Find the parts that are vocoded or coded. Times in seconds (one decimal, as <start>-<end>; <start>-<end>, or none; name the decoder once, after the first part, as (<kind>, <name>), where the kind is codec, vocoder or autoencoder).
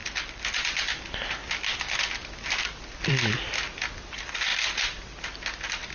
none